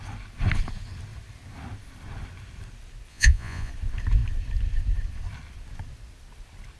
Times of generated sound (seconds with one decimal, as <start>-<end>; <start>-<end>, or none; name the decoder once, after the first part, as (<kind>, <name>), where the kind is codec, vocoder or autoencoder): 3.1-3.7 (vocoder, Vocos)